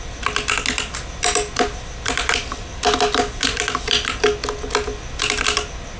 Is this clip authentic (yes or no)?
yes